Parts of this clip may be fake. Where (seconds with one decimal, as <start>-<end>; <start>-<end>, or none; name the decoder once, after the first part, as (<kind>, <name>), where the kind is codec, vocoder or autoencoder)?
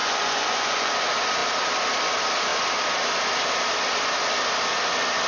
0.0-0.9 (vocoder, Vocos)